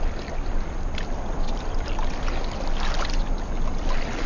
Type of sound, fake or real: real